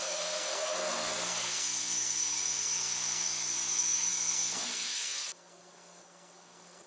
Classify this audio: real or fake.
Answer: fake